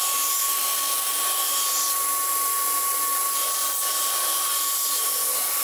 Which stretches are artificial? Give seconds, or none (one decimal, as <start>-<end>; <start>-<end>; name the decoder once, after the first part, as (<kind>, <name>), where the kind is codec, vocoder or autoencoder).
0.4-1.2 (codec, SNAC)